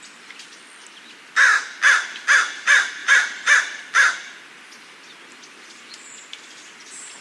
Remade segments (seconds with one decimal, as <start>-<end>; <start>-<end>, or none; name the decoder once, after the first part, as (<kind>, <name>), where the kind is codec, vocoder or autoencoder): 3.0-7.2 (vocoder, BigVGAN v2)